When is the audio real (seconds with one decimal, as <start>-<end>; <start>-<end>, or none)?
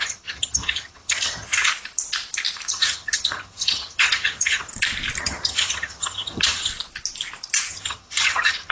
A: 1.7-2.7; 4.7-5.2; 6.7-7.7